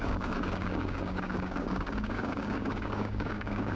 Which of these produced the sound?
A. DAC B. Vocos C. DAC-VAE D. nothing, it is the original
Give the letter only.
A